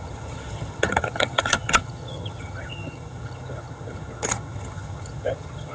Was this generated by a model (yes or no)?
yes